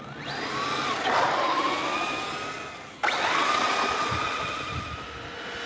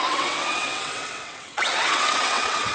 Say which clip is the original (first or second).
first